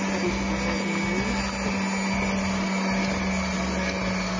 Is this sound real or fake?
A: real